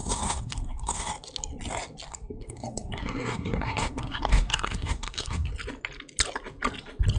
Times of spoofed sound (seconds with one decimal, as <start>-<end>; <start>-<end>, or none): 0.0-1.1; 2.1-5.5